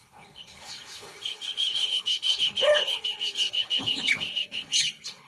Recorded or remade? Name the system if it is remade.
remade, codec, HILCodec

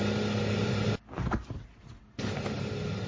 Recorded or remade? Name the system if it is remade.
recorded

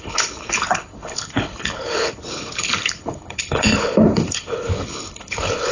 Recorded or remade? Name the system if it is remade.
remade, codec, HILCodec